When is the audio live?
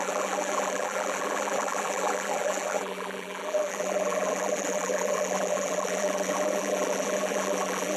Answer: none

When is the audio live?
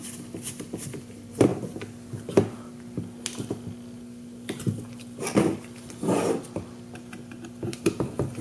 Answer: 0.0-8.4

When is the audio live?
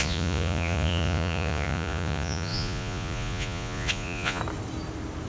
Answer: 4.4-5.3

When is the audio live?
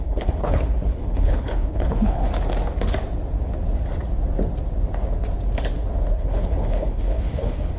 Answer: 2.3-6.1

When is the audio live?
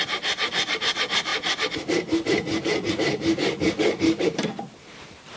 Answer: none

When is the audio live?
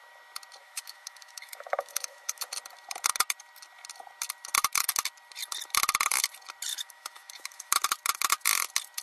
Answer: 0.0-0.6; 2.5-6.7; 7.7-9.0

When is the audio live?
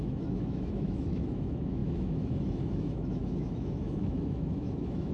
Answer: none